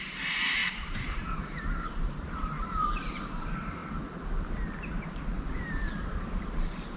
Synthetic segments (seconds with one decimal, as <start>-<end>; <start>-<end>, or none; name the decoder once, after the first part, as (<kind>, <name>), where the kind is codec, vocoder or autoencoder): 0.0-3.8 (vocoder, BigVGAN v2); 5.5-7.0